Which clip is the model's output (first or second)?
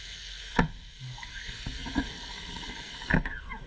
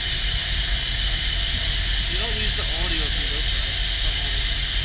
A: first